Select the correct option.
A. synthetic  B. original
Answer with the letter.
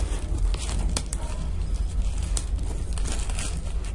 B